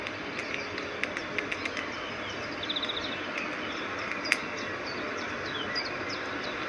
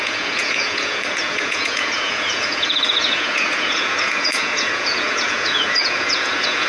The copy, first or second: second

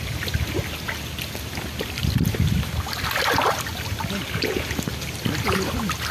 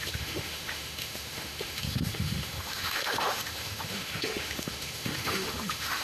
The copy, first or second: second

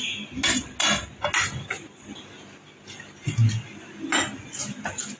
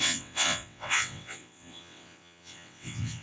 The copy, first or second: second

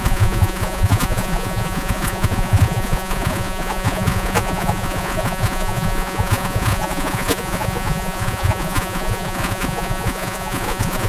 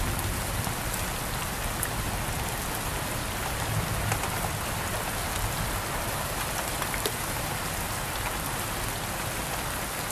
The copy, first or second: first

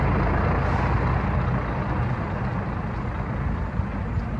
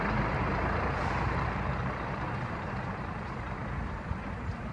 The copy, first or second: second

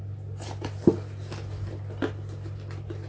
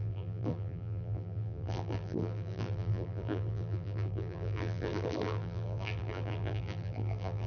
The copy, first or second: second